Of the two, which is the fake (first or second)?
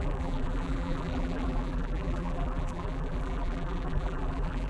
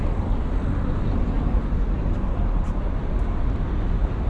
first